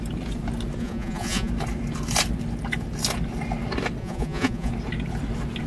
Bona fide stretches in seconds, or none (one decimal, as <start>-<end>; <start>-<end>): 0.0-0.8; 1.5-4.0; 4.7-5.7